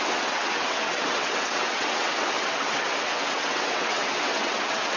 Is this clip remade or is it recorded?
remade